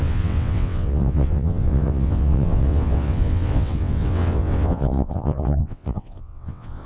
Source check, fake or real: fake